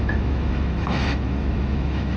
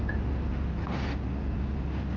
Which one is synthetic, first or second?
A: first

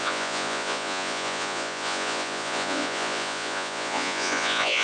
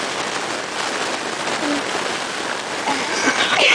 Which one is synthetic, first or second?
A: first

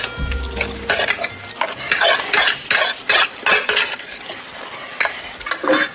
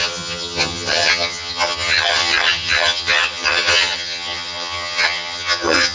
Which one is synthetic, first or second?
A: second